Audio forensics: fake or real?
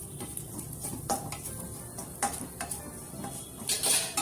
real